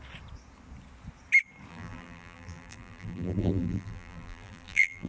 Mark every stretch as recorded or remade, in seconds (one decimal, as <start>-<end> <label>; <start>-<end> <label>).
0.0-1.7 recorded; 1.7-5.1 remade